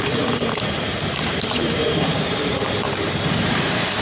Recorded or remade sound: remade